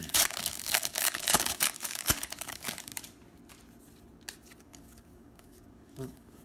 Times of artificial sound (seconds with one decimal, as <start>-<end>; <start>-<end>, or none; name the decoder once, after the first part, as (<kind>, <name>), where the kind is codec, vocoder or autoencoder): 0.0-2.9 (codec, DAC); 4.6-6.4